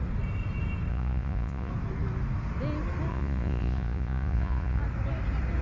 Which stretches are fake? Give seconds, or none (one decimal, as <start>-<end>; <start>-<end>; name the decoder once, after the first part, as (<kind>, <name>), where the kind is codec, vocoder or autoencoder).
0.9-1.7 (vocoder, Vocos); 3.1-4.8